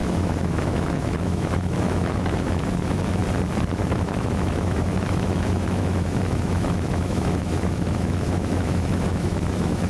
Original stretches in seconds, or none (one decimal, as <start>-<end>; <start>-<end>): 3.2-3.7